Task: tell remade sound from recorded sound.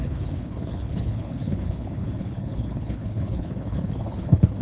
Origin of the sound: remade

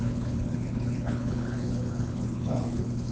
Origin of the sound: remade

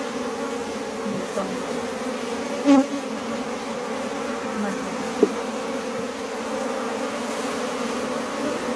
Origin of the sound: recorded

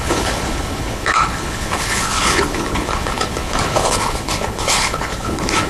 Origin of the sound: remade